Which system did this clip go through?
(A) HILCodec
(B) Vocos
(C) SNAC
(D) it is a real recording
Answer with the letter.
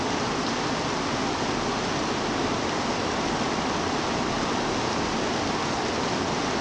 D